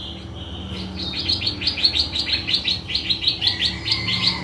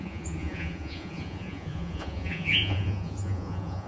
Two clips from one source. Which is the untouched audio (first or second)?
first